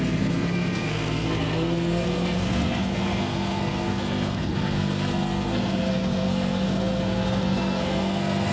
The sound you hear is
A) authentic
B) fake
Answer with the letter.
B